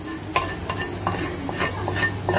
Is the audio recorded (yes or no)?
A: yes